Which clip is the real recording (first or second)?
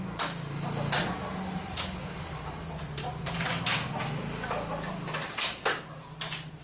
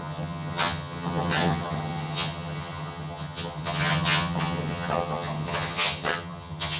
first